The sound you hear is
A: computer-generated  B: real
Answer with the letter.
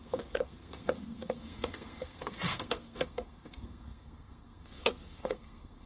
A